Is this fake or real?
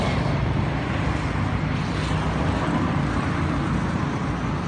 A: real